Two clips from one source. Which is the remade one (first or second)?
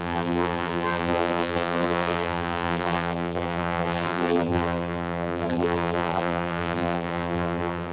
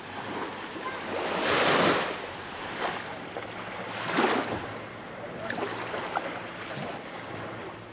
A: first